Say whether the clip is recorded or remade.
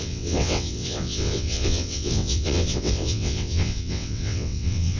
remade